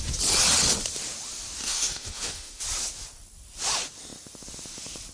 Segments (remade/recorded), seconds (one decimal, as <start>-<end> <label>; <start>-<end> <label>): 0.0-1.6 recorded; 1.6-2.6 remade; 2.6-5.1 recorded